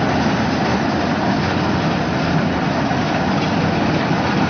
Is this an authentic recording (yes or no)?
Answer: no